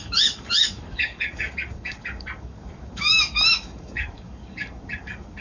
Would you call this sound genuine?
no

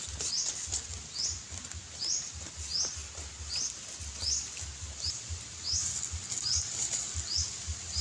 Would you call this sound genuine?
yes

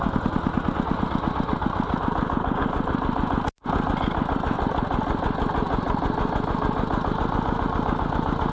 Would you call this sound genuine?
yes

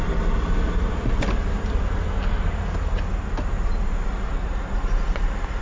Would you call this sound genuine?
yes